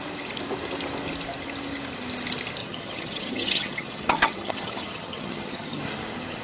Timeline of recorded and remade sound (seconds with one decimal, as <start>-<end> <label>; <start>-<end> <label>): 0.0-2.6 recorded; 2.6-5.8 remade; 5.8-6.4 recorded